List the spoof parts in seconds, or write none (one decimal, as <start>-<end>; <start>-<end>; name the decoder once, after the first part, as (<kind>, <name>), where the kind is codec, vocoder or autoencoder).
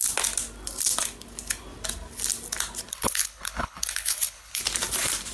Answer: 2.9-4.6 (codec, HILCodec)